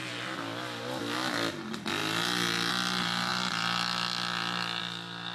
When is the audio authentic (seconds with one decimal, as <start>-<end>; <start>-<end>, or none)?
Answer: 0.0-5.3